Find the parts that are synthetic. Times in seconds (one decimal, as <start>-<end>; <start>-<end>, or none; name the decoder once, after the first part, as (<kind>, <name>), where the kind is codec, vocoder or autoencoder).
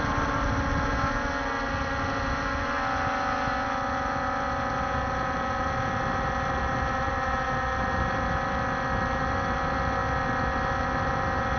none